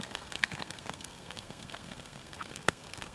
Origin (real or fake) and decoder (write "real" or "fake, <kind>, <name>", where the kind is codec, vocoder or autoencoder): fake, codec, SNAC